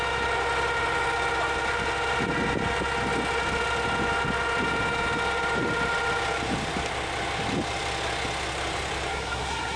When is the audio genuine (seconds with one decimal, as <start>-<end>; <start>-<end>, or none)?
0.0-9.1